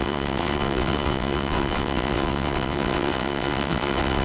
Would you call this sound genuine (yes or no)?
no